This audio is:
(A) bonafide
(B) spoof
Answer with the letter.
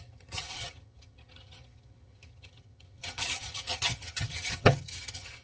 B